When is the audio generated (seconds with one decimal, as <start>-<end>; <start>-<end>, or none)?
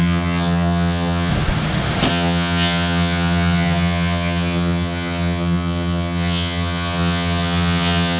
0.0-1.3; 2.1-8.2